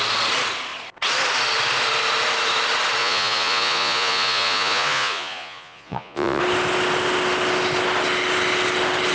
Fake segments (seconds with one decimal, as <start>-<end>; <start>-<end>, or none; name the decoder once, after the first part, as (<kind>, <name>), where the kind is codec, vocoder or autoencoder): 3.0-6.4 (vocoder, Vocos)